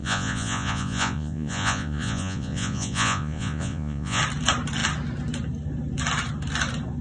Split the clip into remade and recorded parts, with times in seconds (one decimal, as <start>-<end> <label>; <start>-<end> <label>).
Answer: 0.0-4.2 remade; 4.2-7.0 recorded